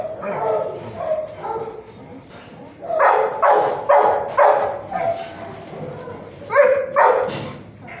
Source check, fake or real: real